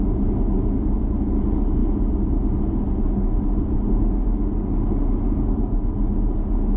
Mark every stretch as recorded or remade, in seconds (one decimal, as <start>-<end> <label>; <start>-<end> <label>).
0.0-6.8 recorded